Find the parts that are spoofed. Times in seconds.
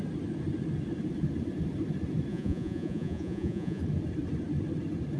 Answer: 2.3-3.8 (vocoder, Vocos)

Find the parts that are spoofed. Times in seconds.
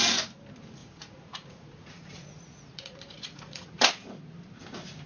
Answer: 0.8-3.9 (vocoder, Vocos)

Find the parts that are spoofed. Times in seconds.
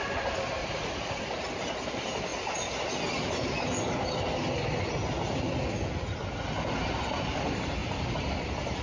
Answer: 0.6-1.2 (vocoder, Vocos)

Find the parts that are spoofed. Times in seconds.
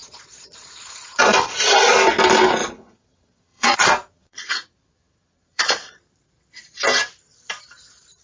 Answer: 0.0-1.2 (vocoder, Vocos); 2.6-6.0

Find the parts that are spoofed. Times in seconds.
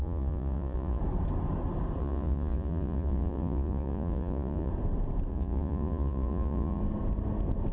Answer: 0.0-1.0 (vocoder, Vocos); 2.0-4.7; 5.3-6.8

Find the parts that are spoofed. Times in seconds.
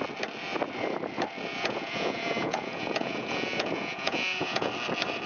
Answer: 1.5-4.7 (vocoder, Vocos)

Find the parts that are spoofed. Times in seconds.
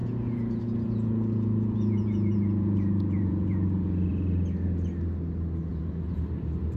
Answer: 0.0-4.1 (vocoder, Vocos); 5.7-6.2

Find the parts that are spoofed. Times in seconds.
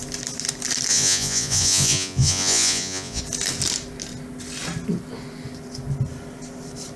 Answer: 0.9-3.2 (vocoder, Vocos)